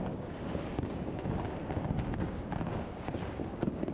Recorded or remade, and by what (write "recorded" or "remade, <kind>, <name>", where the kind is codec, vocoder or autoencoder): remade, codec, DAC